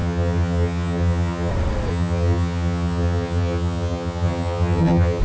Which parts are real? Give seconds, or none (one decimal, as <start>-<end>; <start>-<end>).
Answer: 1.5-1.9